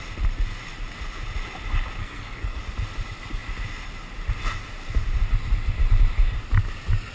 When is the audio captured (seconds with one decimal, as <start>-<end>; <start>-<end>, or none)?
0.0-2.0; 2.6-7.1

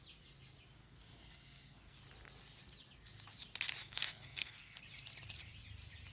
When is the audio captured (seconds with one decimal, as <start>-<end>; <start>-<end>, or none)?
0.0-0.8; 2.0-3.8; 4.8-6.1